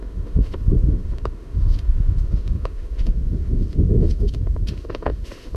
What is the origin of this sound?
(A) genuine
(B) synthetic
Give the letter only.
B